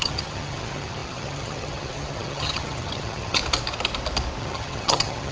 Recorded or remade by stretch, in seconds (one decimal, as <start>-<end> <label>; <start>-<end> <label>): 0.0-3.4 remade; 3.4-4.4 recorded; 4.4-5.3 remade